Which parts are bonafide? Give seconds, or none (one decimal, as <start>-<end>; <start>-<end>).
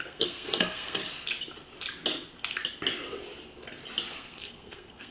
1.0-4.1